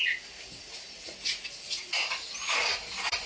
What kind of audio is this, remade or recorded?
recorded